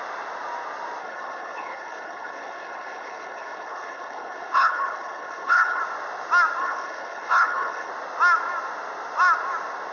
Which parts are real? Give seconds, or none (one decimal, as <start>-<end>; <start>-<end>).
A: 0.0-1.0; 5.8-6.6; 7.9-9.9